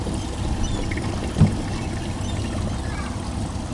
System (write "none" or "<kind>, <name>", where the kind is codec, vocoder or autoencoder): none